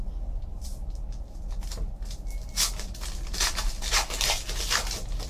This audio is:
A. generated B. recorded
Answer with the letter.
B